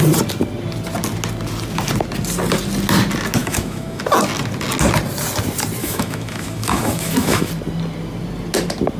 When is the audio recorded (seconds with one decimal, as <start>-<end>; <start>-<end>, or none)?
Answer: 0.0-3.4; 4.0-5.8; 7.5-9.0